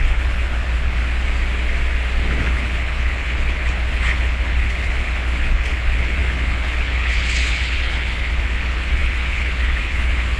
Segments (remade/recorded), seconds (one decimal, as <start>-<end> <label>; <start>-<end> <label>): 0.0-1.0 remade; 1.0-2.4 recorded; 2.4-10.4 remade